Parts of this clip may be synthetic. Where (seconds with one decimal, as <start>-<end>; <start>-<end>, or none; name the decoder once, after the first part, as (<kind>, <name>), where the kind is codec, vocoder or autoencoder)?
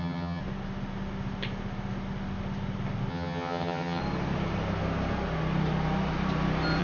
0.0-0.4 (vocoder, HiFi-GAN); 3.1-4.0